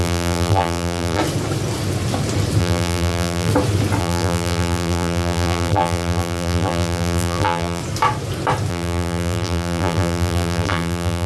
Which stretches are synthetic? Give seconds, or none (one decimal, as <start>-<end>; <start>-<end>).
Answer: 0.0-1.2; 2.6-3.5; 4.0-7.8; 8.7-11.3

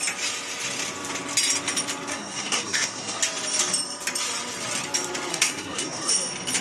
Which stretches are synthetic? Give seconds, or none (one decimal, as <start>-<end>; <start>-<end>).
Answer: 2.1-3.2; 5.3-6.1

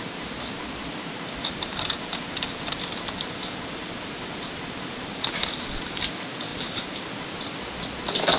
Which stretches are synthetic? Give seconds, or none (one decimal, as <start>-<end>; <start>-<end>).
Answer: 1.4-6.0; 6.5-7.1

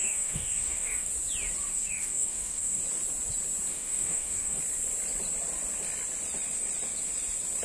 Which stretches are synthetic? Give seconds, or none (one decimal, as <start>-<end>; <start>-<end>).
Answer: 0.0-1.1; 1.7-2.8; 3.7-4.6

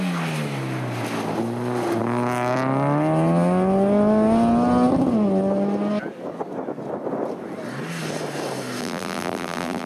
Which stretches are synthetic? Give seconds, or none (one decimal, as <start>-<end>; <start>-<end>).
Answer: 8.8-9.9